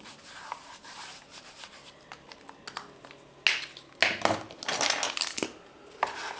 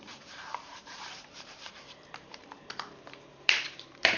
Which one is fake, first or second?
second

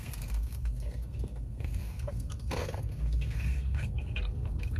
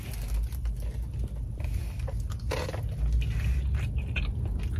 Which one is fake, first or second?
first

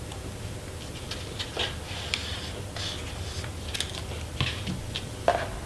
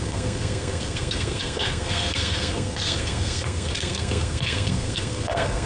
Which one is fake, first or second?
second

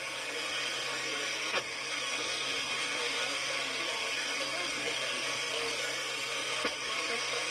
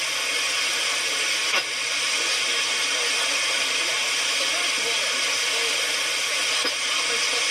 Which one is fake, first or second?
first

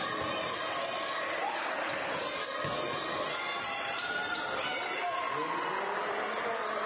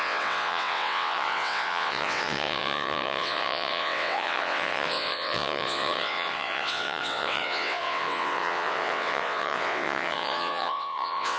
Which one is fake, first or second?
second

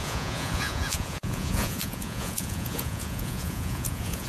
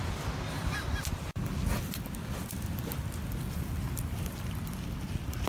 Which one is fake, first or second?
first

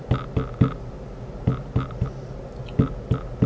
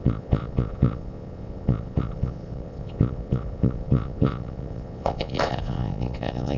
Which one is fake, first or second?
second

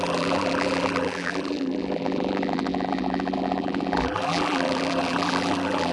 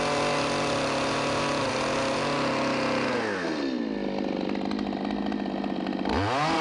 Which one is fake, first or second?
first